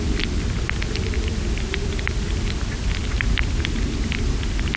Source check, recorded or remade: recorded